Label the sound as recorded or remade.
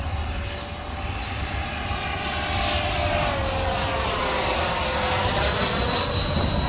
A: recorded